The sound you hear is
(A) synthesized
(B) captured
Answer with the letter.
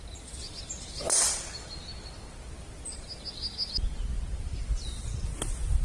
B